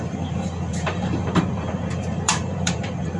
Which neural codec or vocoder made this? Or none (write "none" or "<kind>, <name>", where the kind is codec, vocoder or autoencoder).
vocoder, BigVGAN v2